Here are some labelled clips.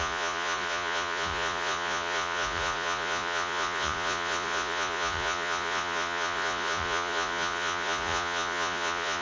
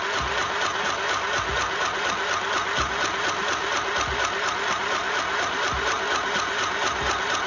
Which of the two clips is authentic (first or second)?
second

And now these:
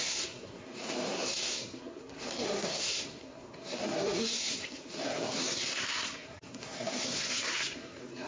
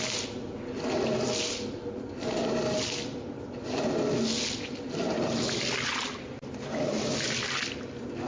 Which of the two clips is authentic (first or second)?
second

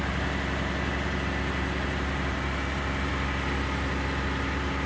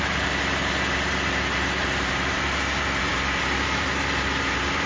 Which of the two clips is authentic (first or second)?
first